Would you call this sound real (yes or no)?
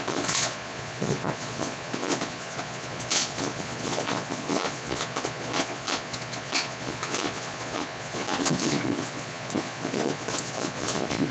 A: no